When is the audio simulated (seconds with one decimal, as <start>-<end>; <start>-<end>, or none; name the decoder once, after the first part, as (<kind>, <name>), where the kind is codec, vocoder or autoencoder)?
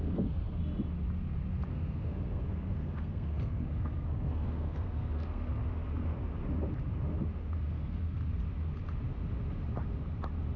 0.0-0.6 (codec, SNAC); 1.7-5.6; 7.7-8.2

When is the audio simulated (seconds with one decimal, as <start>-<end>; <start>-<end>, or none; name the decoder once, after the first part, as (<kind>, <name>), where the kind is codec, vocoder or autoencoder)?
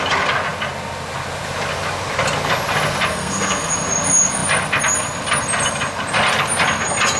3.1-3.7 (codec, SNAC)